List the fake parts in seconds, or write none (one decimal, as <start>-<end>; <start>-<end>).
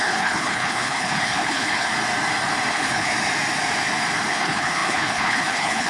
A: 0.0-1.9; 2.7-3.1; 4.3-5.9